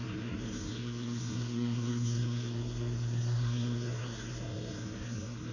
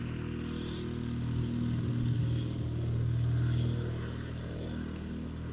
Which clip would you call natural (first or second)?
second